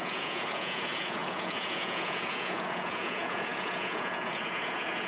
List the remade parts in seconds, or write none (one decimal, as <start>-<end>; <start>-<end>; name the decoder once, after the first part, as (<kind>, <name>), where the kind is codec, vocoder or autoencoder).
0.0-5.1 (vocoder, Vocos)